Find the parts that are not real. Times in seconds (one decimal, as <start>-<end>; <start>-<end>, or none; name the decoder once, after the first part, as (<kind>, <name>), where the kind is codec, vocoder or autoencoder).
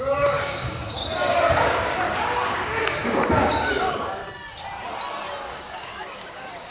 0.0-1.0 (codec, DAC); 1.5-4.2; 5.5-6.7